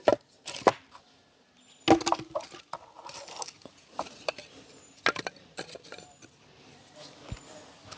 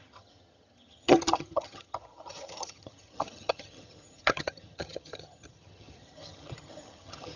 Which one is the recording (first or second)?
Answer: first